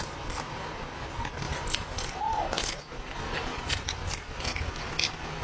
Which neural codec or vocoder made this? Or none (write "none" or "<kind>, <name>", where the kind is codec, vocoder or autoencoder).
none